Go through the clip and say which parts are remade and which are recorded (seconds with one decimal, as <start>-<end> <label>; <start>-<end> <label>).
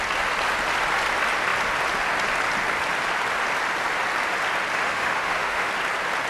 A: 0.0-4.7 recorded; 4.7-5.7 remade; 5.7-6.3 recorded